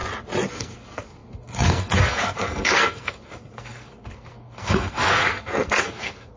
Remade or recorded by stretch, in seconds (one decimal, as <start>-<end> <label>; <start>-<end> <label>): 0.0-0.5 recorded; 0.5-6.4 remade